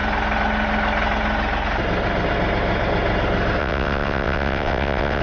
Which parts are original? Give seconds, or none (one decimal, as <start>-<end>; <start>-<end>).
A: 0.0-3.6